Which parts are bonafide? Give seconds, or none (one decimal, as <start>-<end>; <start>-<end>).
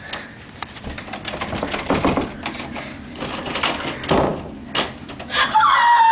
0.0-6.1